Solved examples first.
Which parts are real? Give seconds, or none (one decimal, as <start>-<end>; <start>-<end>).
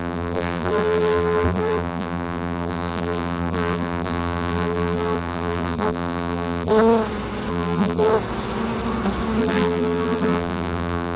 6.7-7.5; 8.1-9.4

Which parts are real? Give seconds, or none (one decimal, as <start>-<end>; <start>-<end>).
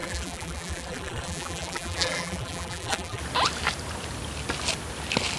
3.2-5.4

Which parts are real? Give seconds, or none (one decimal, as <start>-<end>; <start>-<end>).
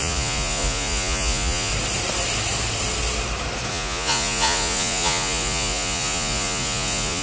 1.7-3.7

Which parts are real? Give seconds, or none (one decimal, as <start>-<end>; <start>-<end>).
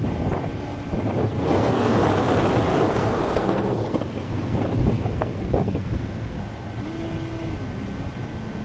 0.0-1.2; 1.9-2.7; 6.4-8.6